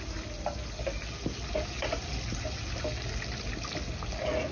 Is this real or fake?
real